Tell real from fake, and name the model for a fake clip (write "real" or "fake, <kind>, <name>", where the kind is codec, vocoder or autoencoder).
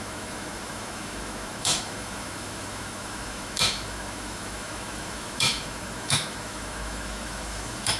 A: fake, autoencoder, DAC-VAE